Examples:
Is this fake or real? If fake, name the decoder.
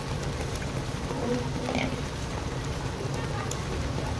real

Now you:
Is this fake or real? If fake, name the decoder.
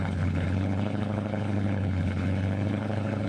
fake, codec, HILCodec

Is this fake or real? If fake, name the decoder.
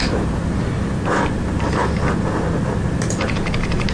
real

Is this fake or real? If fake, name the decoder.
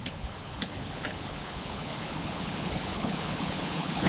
fake, codec, HILCodec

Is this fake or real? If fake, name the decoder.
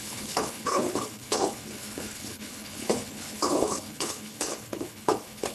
fake, codec, HILCodec